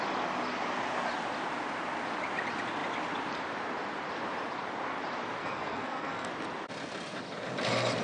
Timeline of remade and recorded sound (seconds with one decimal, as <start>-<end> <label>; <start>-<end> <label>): 0.0-5.4 recorded; 5.4-6.3 remade; 6.3-8.0 recorded